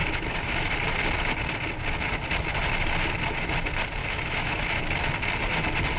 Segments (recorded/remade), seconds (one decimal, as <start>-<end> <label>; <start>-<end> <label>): 0.0-0.7 remade; 0.7-4.0 recorded; 4.0-4.8 remade; 4.8-6.0 recorded